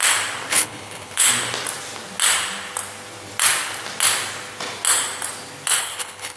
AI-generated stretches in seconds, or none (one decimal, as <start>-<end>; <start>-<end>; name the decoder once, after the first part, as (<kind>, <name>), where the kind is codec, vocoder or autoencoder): 0.5-1.3 (codec, HILCodec); 5.8-6.4